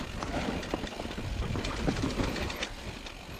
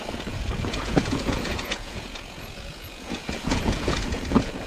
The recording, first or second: first